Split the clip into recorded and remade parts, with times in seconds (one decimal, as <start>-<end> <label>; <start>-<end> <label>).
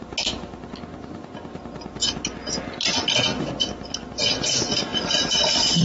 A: 0.0-3.3 recorded; 3.3-4.3 remade; 4.3-4.9 recorded; 4.9-5.8 remade